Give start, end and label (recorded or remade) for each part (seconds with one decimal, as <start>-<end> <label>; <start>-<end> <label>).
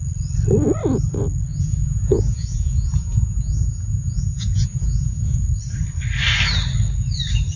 0.0-1.5 recorded; 1.5-5.4 remade; 5.4-7.6 recorded